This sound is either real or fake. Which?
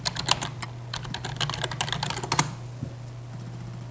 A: real